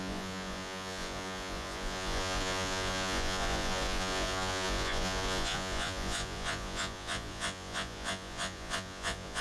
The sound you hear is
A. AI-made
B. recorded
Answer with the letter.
A